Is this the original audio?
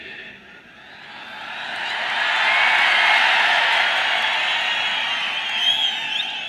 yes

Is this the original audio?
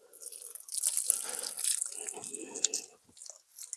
yes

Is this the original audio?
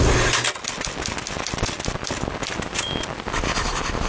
yes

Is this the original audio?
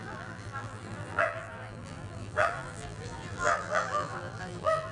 no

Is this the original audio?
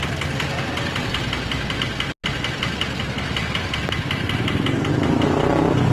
yes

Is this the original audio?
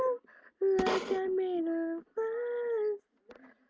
yes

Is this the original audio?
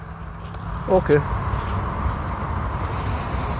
yes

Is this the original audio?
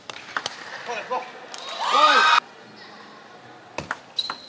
yes